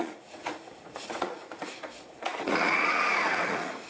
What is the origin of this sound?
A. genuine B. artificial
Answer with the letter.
B